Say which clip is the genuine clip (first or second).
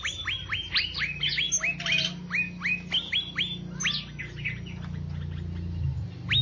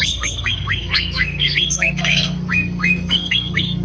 first